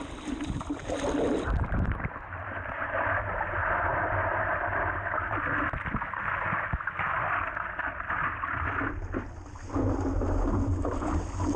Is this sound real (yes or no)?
yes